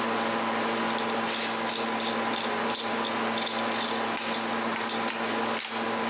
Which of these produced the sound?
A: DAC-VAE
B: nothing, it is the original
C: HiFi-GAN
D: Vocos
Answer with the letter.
B